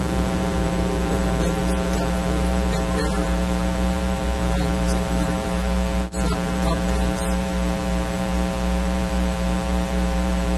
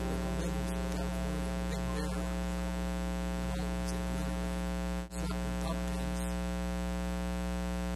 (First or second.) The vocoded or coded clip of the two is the first